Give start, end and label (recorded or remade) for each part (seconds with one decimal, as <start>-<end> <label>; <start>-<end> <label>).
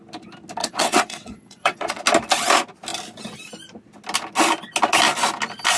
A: 0.0-0.6 recorded; 0.6-2.0 remade; 2.0-5.8 recorded